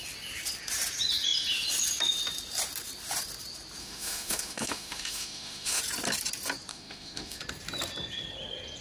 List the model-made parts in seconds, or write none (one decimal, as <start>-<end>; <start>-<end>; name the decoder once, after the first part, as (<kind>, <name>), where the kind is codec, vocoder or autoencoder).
3.8-5.8 (autoencoder, DAC-VAE); 6.7-7.4

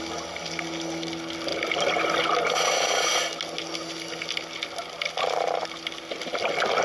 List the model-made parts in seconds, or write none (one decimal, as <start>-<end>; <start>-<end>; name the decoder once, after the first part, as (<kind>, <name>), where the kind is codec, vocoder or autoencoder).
none

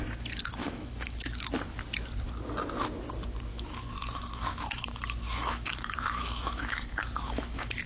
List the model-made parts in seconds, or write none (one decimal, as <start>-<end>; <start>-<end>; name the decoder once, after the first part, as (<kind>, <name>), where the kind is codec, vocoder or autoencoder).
0.6-1.4 (autoencoder, DAC-VAE); 3.5-7.9

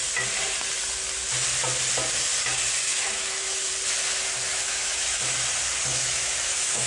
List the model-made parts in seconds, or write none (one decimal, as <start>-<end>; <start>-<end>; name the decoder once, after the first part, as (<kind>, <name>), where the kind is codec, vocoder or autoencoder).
2.9-3.7 (autoencoder, DAC-VAE); 4.5-5.2; 5.9-6.9